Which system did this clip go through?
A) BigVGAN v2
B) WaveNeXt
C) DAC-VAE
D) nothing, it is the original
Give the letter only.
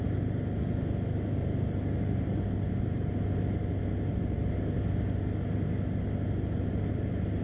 D